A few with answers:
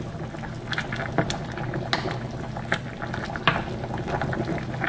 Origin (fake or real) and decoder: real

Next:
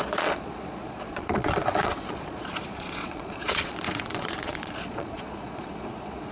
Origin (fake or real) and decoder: fake, vocoder, Vocos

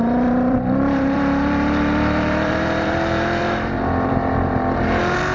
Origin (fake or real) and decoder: fake, vocoder, BigVGAN v2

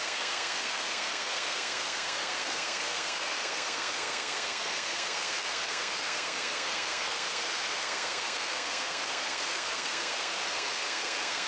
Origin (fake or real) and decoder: fake, codec, SNAC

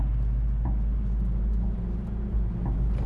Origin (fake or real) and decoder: real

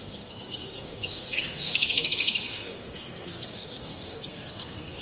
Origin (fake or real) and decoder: fake, codec, SNAC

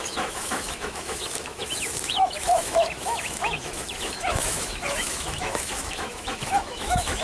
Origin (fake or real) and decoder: fake, autoencoder, DAC-VAE